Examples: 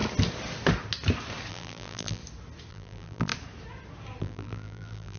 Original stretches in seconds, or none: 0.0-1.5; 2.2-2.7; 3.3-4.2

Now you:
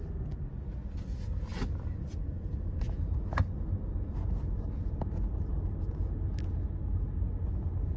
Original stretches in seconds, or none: 0.0-8.0

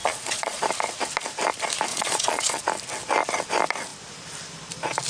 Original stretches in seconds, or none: 0.6-1.9; 2.6-5.1

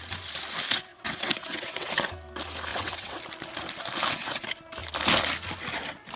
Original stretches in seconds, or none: 0.0-0.9; 1.9-2.7; 3.2-6.2

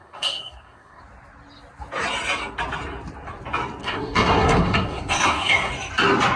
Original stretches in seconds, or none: 1.0-3.8; 5.7-6.4

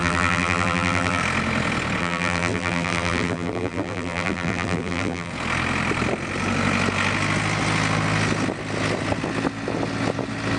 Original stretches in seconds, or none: 1.2-2.0; 5.3-10.6